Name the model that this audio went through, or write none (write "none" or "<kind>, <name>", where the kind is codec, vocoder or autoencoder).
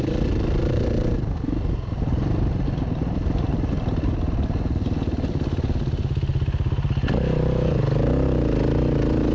none